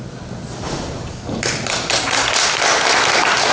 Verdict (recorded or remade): recorded